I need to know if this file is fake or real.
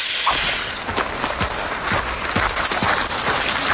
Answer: real